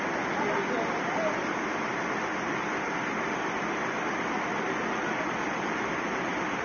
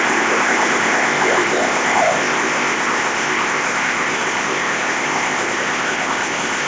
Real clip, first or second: first